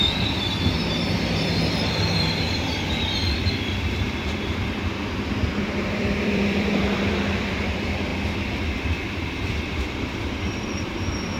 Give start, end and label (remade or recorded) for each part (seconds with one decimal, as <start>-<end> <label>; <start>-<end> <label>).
0.0-8.1 remade; 8.1-9.5 recorded; 9.5-11.4 remade